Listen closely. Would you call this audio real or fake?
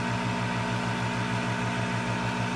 real